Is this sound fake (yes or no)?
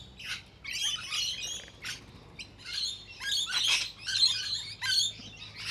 no